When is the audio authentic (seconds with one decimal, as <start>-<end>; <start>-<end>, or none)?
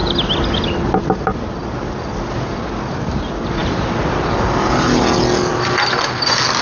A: 0.0-3.6; 4.9-6.6